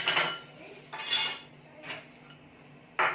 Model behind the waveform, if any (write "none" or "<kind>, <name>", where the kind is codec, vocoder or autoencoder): none